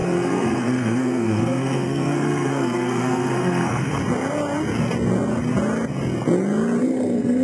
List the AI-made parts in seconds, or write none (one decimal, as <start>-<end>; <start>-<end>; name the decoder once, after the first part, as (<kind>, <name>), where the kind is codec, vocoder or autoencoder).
0.0-4.0 (codec, SNAC); 6.8-7.4